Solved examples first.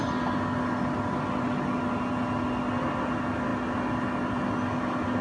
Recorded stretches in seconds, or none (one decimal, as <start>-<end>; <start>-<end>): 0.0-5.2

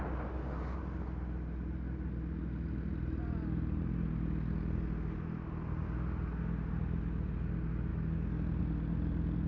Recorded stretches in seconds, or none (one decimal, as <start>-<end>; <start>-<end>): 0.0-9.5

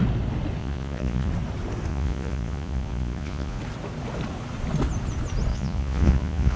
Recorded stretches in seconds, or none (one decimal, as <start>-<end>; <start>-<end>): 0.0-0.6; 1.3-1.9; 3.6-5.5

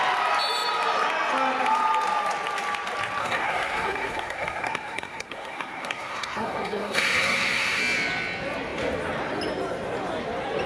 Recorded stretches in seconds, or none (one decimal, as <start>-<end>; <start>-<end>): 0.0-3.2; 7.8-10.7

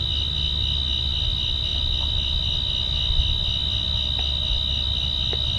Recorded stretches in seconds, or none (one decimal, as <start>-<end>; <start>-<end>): 0.0-5.6

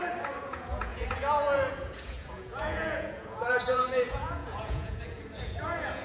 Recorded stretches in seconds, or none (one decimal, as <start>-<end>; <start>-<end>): 0.0-0.5

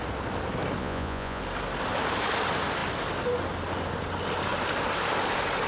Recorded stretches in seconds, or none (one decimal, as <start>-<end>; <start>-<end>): 0.0-0.8; 1.4-5.7

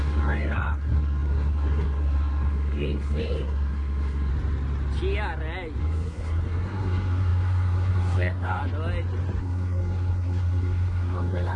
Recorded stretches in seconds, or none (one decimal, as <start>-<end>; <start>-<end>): 4.3-5.8; 8.6-9.4